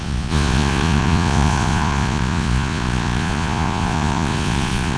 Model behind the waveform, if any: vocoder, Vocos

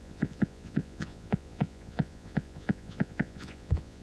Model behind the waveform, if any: vocoder, Vocos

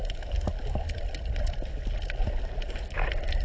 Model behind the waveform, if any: none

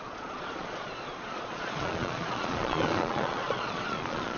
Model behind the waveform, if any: vocoder, Vocos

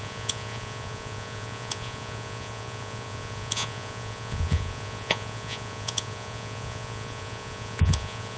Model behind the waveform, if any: vocoder, Vocos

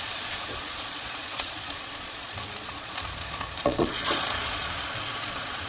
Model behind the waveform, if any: vocoder, Vocos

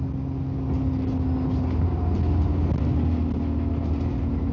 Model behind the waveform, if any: none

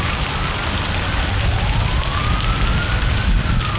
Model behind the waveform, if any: none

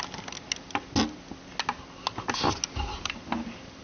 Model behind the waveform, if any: none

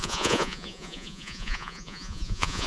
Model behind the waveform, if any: vocoder, Vocos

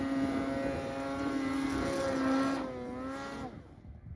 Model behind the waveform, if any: none